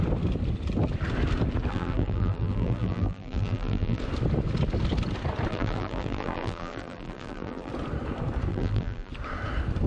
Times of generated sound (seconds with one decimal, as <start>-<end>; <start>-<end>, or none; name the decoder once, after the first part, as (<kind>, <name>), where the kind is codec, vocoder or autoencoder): 1.7-4.0 (vocoder, BigVGAN v2); 5.5-7.7; 8.5-9.1